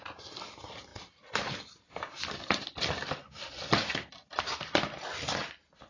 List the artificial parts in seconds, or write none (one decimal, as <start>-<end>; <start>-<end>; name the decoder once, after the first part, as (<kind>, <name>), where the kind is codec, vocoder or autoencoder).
none